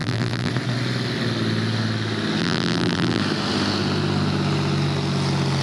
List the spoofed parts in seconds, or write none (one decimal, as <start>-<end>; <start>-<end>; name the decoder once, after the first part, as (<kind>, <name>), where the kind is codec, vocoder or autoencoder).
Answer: 0.0-0.5 (vocoder, BigVGAN v2); 2.4-3.2